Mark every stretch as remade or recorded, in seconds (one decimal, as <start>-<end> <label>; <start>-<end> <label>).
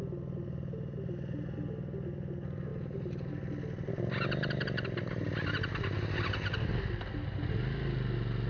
0.0-8.5 recorded